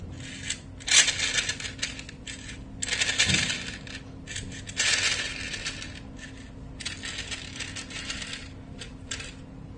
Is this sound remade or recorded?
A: recorded